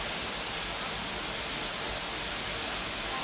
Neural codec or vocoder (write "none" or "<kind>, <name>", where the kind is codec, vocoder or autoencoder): none